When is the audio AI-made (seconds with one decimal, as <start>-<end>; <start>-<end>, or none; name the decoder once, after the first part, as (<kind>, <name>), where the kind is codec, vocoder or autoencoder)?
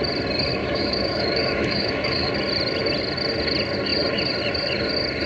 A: 0.6-2.3 (autoencoder, DAC-VAE)